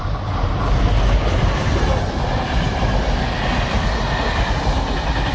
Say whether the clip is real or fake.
real